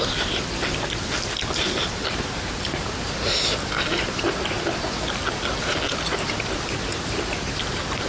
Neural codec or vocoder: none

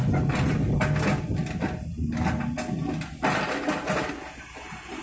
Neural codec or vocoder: none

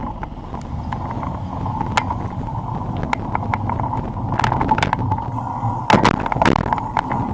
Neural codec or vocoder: none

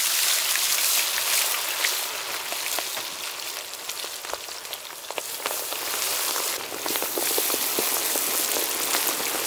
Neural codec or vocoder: none